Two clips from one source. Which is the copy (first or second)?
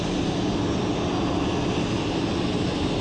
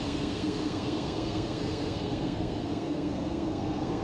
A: second